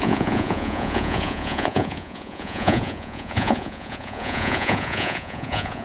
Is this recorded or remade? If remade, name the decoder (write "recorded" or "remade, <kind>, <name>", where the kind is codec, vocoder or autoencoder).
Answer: remade, vocoder, Vocos